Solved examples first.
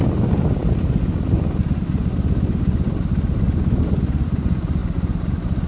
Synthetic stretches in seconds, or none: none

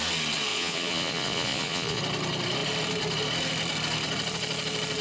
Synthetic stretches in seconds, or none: 0.5-2.0 (vocoder, Vocos)

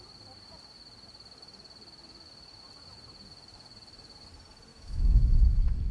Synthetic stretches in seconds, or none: 4.7-5.9 (autoencoder, DAC-VAE)